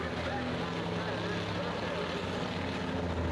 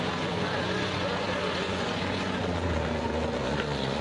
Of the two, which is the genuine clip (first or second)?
first